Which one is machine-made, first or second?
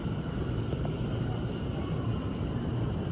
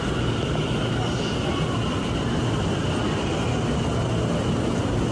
first